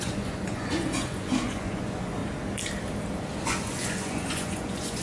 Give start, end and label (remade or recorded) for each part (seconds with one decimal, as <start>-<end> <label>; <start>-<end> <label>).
0.0-2.2 remade; 2.2-3.4 recorded; 3.4-5.0 remade